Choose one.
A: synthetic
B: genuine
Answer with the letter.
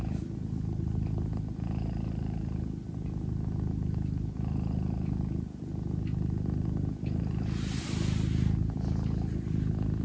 B